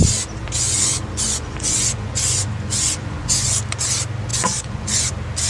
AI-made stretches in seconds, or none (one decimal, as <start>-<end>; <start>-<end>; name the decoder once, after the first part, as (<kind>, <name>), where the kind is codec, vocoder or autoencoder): 0.4-3.5 (vocoder, Vocos); 4.3-5.1